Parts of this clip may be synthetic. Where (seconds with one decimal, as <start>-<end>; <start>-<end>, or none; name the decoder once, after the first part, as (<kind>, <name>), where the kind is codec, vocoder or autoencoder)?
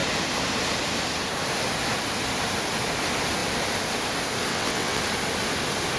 4.5-5.0 (vocoder, WaveNeXt)